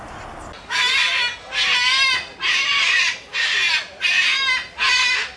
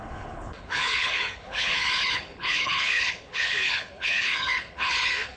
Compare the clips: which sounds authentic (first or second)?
first